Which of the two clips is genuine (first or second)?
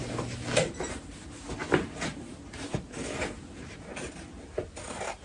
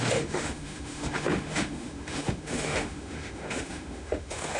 first